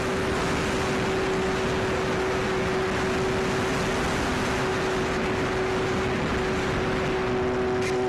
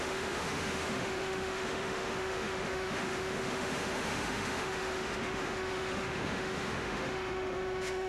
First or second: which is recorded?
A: first